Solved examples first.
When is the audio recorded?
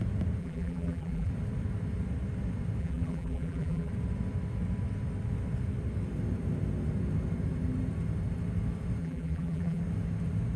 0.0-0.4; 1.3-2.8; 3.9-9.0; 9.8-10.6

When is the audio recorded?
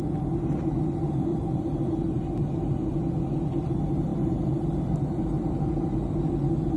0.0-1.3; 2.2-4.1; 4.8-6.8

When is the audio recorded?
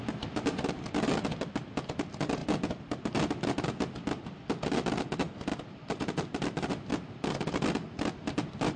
0.0-5.5; 6.9-8.8